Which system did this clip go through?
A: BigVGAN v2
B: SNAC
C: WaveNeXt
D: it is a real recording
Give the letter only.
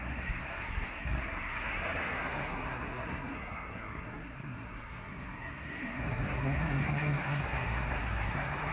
B